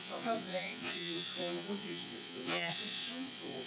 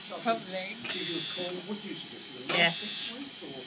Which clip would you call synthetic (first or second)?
first